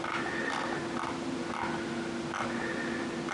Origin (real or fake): real